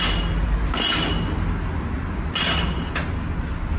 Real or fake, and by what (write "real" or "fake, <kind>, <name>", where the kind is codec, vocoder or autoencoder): real